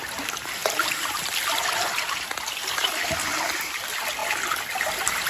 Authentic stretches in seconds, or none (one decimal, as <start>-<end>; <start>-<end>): 0.0-5.3